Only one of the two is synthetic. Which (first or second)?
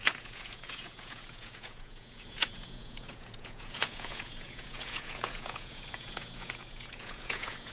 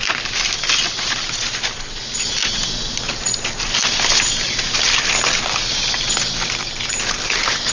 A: first